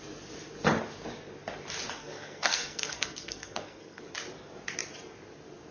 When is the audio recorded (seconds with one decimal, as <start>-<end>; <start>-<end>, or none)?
0.0-2.0; 4.0-5.7